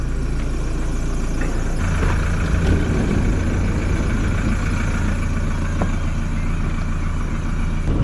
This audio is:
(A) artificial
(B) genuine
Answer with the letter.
B